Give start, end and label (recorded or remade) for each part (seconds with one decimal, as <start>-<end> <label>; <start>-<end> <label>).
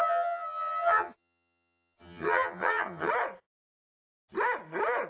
0.0-3.1 remade; 3.1-5.1 recorded